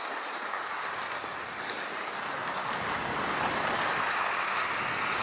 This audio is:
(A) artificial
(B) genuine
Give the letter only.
B